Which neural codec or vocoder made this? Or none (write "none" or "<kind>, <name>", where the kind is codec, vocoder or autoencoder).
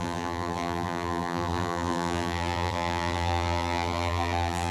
vocoder, BigVGAN v2